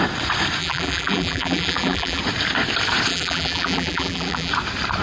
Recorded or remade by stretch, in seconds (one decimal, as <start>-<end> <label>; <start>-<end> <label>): 0.0-0.6 recorded; 0.6-2.2 remade; 2.2-3.1 recorded; 3.1-4.5 remade; 4.5-5.0 recorded